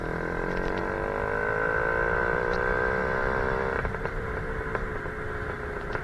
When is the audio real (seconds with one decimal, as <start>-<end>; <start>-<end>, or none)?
0.8-2.2; 4.7-5.4

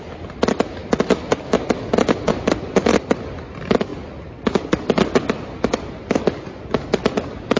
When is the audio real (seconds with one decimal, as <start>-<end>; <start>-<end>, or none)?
0.0-7.6

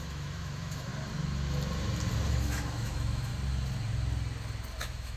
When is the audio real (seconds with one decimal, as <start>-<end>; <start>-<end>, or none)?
0.9-2.3; 3.3-4.8

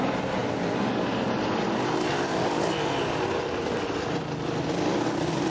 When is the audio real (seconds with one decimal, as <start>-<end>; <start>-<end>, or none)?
0.0-5.5

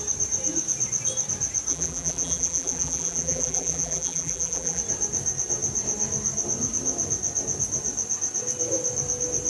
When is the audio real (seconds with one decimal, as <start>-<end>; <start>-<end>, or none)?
0.0-1.7; 4.8-9.5